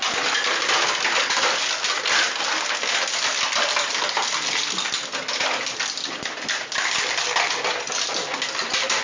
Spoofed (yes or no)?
no